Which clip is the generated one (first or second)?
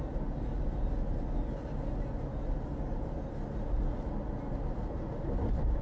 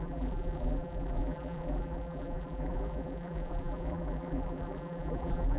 second